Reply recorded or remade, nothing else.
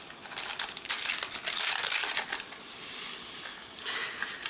recorded